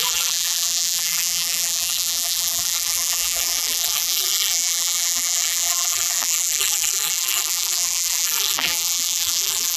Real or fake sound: fake